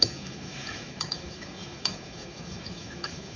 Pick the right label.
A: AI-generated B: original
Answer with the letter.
A